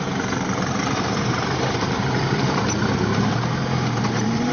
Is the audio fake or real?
fake